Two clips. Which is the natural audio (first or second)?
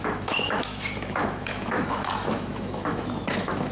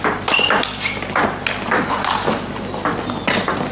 second